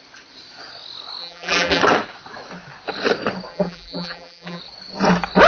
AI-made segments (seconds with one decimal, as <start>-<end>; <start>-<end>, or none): 1.2-1.8; 3.5-4.6